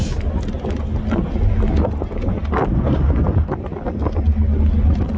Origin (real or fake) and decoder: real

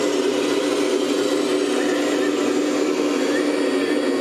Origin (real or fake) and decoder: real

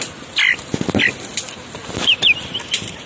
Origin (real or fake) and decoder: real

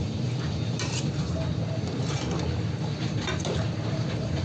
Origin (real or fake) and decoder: real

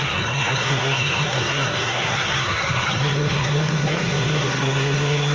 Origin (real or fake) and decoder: fake, codec, SNAC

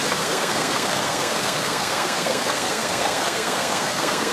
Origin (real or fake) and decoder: fake, codec, SNAC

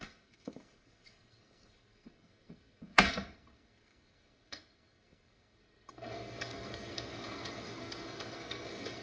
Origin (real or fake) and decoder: fake, codec, SNAC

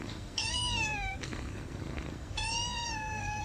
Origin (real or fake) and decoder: fake, codec, SNAC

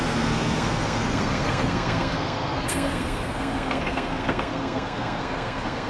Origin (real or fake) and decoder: fake, codec, SNAC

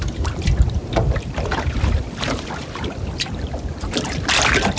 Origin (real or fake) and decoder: real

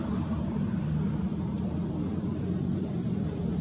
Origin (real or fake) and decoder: real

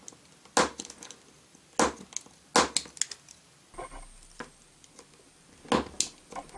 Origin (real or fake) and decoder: real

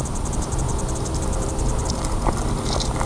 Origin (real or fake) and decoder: real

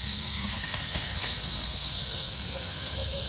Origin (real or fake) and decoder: fake, codec, SNAC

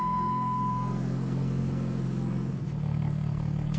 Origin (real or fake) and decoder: fake, codec, SNAC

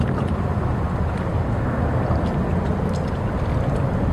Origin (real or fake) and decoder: real